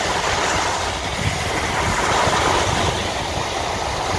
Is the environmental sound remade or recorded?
recorded